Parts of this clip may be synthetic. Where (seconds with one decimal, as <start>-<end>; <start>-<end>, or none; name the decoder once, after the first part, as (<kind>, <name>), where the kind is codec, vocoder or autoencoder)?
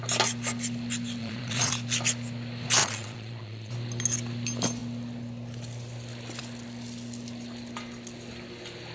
1.2-1.7 (vocoder, Vocos); 2.8-3.7